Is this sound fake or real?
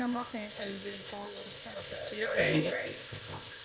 fake